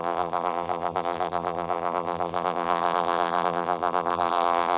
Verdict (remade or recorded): remade